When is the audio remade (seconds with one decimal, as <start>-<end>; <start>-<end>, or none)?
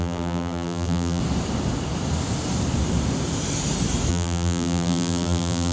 0.0-1.2; 4.1-5.7